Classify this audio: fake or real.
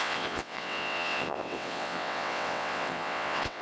fake